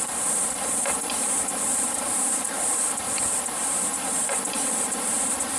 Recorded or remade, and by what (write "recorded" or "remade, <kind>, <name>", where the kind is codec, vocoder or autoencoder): remade, vocoder, BigVGAN v2